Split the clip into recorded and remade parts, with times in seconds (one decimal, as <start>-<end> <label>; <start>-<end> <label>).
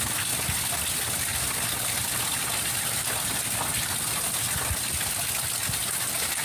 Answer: 0.0-6.4 recorded